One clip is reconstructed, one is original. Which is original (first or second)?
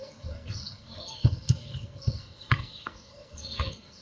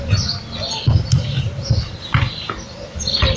second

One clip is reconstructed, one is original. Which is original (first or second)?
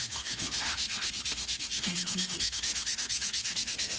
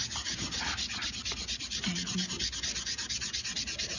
second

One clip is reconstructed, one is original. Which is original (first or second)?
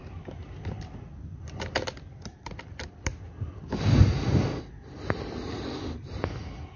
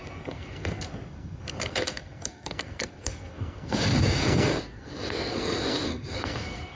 first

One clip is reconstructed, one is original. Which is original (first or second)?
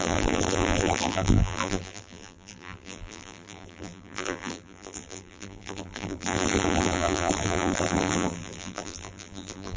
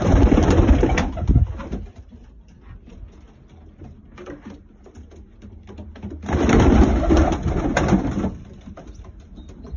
second